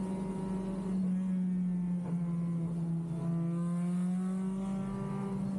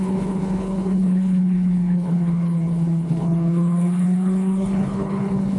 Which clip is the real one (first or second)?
first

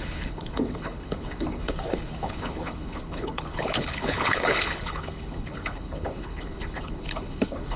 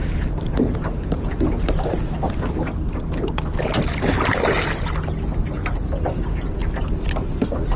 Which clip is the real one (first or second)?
second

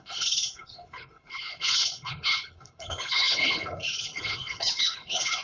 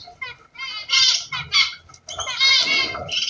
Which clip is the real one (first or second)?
second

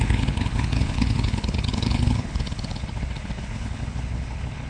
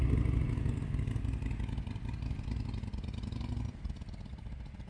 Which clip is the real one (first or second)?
second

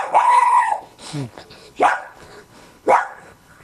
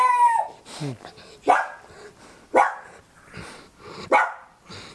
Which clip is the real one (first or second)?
second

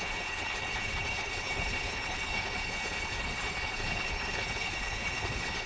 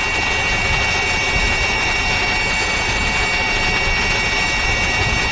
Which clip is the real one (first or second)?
second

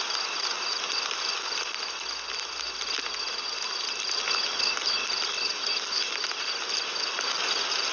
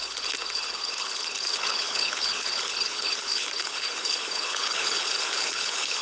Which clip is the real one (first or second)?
first